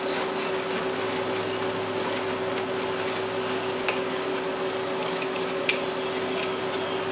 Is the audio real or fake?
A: real